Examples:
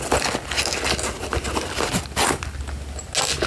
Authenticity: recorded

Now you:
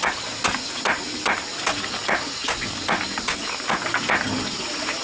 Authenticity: recorded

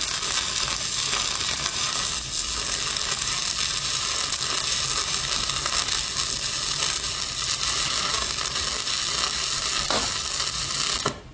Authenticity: recorded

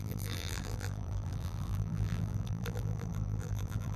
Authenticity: remade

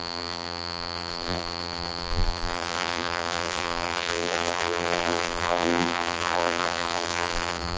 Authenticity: remade